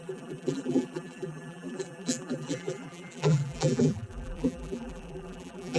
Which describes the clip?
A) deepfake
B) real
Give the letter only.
A